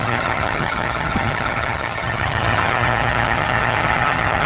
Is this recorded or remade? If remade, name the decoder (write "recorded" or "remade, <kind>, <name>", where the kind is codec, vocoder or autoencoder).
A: remade, vocoder, HiFi-GAN